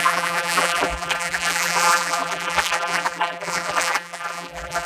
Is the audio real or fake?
fake